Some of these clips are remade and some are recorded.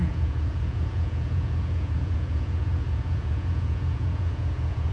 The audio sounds remade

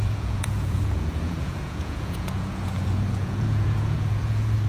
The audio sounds remade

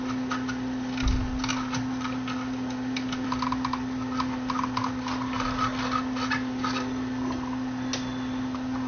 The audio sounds recorded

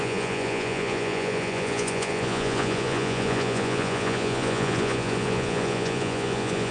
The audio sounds remade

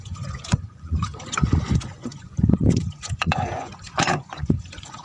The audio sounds remade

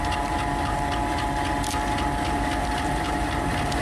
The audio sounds recorded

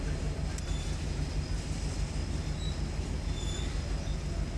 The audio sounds recorded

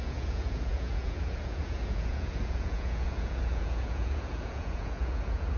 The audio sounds remade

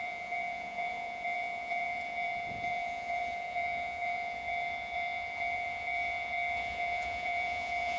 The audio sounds remade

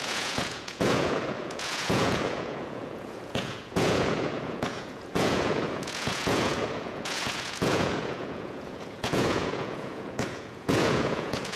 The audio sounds remade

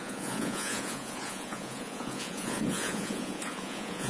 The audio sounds remade